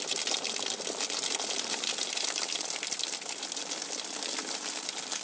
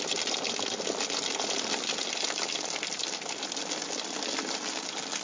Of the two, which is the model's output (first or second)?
first